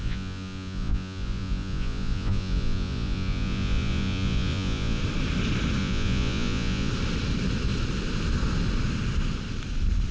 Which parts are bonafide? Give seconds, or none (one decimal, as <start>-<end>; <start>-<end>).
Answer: 5.0-5.8; 6.9-10.1